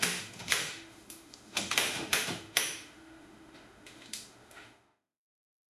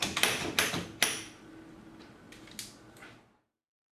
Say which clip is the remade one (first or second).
first